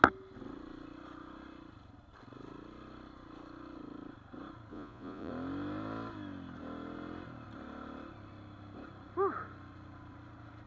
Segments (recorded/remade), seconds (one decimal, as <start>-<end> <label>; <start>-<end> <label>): 0.0-4.7 recorded; 4.7-5.3 remade; 5.3-10.7 recorded